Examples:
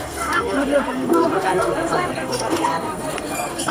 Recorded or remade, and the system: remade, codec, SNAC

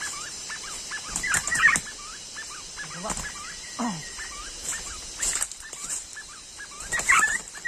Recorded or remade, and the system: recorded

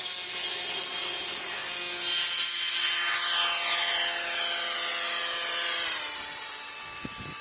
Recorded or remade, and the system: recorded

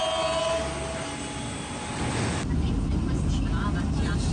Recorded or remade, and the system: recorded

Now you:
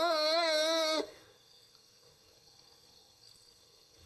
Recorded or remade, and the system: remade, codec, SNAC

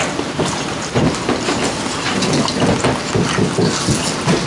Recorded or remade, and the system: recorded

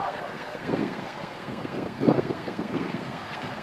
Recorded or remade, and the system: remade, codec, SNAC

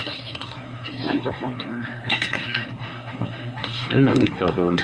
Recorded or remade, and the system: remade, codec, SNAC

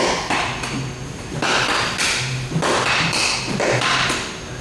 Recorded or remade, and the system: recorded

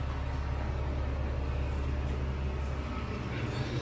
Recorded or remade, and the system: recorded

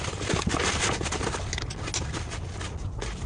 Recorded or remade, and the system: recorded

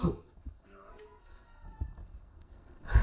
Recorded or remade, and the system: remade, codec, SNAC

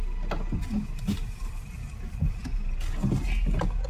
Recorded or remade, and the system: recorded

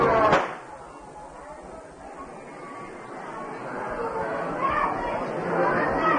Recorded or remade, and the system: recorded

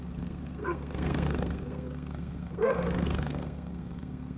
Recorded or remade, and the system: remade, codec, SNAC